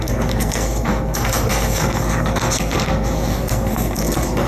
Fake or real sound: fake